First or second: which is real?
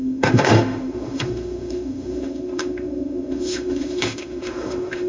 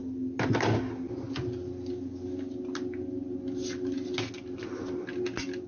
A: second